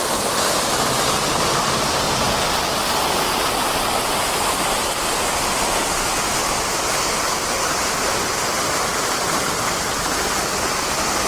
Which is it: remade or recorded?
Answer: recorded